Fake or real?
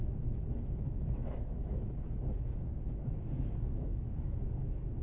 fake